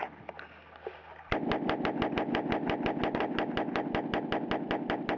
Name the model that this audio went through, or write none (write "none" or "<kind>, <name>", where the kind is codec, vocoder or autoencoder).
none